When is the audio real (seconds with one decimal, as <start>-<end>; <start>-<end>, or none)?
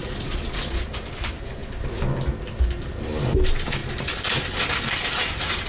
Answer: 0.8-5.7